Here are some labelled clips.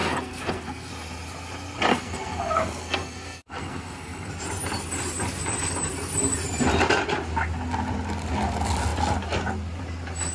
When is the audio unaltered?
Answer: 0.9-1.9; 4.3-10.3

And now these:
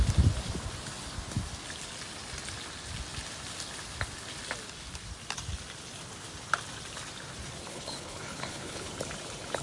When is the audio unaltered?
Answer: 0.0-7.7; 8.9-9.6

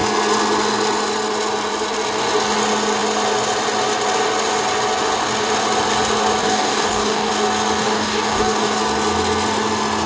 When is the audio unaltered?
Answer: 0.0-6.4; 7.3-7.8; 8.8-10.1

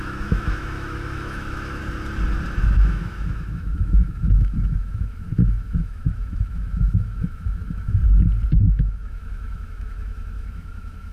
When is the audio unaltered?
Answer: 1.8-2.6; 8.0-8.6

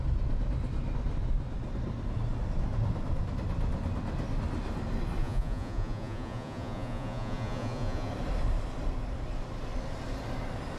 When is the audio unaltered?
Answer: 0.0-5.2; 8.1-10.8

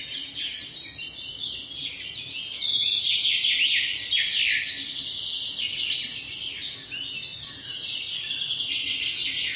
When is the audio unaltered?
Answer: 0.0-9.6

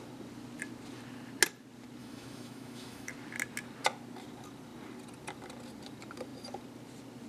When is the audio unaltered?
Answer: 0.0-2.0; 3.1-7.3